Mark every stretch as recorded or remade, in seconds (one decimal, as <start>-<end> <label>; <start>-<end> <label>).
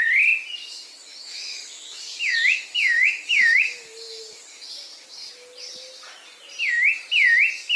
0.0-0.6 recorded; 0.6-5.3 remade; 5.3-7.8 recorded